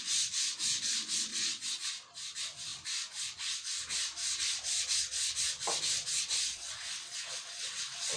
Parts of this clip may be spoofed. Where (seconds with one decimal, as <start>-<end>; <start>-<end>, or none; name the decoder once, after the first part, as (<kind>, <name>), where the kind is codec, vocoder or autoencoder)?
1.3-1.9 (vocoder, WaveNeXt); 6.5-8.2